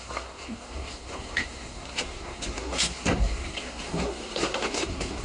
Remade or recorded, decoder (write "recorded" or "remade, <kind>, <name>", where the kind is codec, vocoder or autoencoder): remade, codec, SNAC